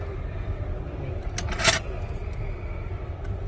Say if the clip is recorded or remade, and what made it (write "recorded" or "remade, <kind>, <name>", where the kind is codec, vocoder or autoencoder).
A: recorded